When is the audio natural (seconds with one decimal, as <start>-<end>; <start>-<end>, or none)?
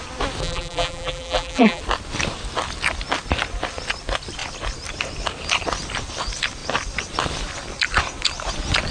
0.0-0.4; 1.8-8.9